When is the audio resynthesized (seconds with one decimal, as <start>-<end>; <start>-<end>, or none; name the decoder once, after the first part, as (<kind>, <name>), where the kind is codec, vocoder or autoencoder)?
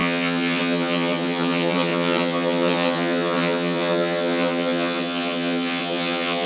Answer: 0.0-6.5 (vocoder, HiFi-GAN)